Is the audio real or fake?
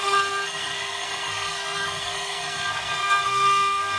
fake